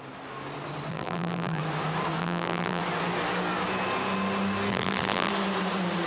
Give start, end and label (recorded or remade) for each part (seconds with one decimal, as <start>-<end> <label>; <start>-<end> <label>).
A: 0.0-0.9 recorded; 0.9-1.6 remade; 1.6-2.2 recorded; 2.2-2.8 remade; 2.8-4.7 recorded; 4.7-5.3 remade; 5.3-6.1 recorded